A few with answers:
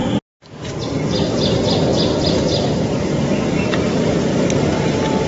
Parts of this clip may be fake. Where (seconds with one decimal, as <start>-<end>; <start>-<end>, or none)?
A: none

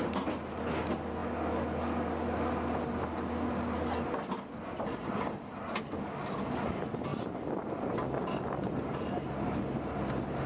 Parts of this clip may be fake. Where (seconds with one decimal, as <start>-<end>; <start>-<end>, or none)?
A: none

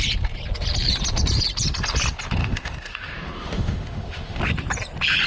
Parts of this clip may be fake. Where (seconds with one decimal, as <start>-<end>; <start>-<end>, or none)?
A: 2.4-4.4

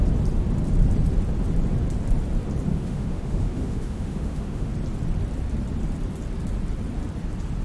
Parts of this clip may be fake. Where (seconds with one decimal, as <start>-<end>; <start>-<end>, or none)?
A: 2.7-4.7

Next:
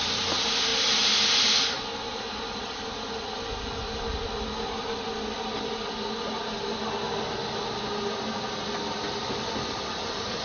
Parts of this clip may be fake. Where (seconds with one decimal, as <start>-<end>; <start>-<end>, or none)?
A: none